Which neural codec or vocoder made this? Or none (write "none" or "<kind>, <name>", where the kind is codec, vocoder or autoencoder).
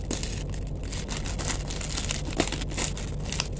none